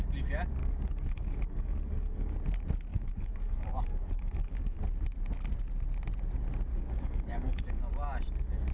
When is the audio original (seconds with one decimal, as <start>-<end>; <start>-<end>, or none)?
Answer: 0.0-0.6; 2.3-2.9; 4.8-6.7; 7.8-8.7